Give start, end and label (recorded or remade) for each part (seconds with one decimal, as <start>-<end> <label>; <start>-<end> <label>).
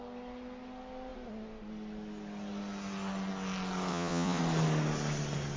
0.0-3.9 recorded; 3.9-4.4 remade; 4.4-5.6 recorded